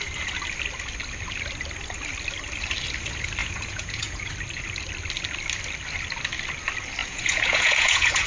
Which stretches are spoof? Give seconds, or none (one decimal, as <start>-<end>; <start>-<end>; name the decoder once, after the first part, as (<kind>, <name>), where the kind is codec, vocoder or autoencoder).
3.4-4.3 (vocoder, Vocos); 7.0-8.3